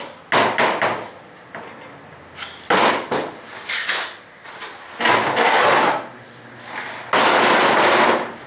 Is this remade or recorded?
recorded